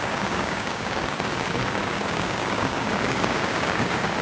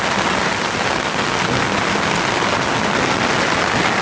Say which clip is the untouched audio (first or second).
second